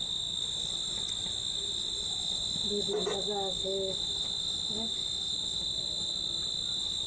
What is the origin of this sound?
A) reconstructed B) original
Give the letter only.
B